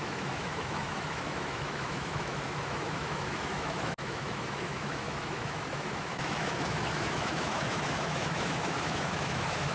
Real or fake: fake